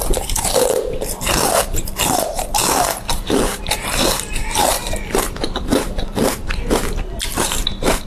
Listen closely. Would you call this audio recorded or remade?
remade